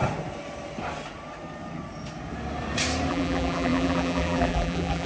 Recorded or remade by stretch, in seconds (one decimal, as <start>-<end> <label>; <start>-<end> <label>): 0.0-3.1 recorded; 3.1-5.1 remade